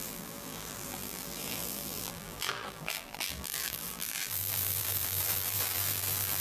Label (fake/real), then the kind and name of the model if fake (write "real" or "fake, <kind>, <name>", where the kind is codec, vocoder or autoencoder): fake, vocoder, BigVGAN v2